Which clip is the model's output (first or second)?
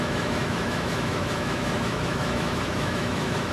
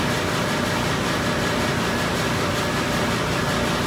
first